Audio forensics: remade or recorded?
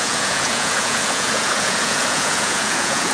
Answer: remade